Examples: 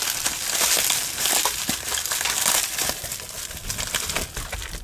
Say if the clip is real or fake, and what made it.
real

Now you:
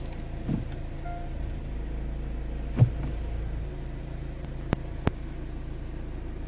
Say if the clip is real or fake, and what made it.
real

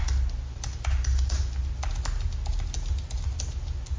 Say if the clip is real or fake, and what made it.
real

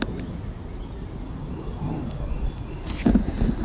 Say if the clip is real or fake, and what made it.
real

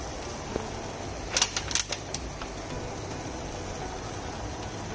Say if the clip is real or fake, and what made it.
real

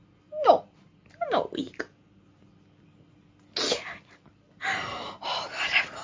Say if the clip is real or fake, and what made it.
real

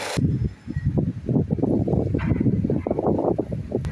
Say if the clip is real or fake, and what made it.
real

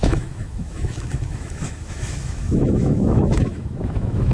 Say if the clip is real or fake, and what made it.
fake, autoencoder, DAC-VAE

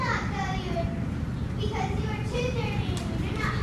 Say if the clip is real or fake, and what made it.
real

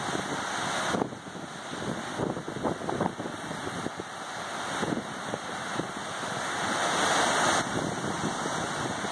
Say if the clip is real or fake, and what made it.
real